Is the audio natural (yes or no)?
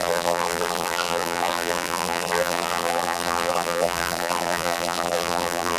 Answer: no